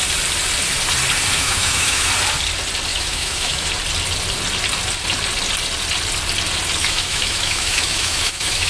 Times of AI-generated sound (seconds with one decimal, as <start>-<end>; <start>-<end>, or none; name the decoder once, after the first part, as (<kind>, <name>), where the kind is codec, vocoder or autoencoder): 1.3-2.1 (autoencoder, DAC-VAE); 2.9-3.7; 6.8-8.7